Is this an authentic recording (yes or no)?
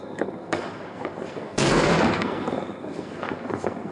no